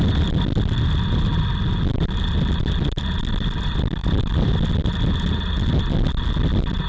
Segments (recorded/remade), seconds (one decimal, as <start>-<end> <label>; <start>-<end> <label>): 0.0-4.0 recorded; 4.0-4.5 remade; 4.5-6.9 recorded